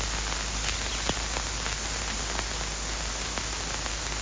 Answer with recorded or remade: recorded